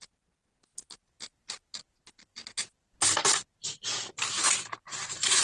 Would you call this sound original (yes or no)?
yes